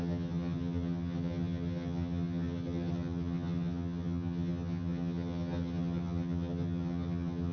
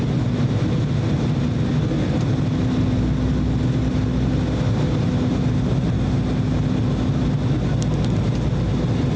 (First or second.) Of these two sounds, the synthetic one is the first